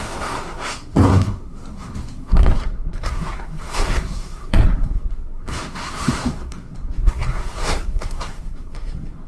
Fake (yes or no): yes